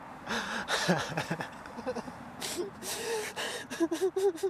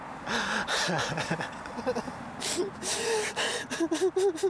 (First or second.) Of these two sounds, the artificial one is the first